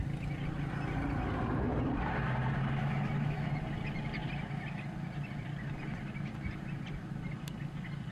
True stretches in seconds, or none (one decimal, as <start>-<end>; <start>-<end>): 0.0-2.8; 3.5-8.1